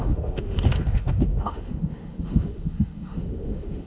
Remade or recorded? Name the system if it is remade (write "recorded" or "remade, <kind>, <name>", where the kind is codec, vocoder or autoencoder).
remade, autoencoder, DAC-VAE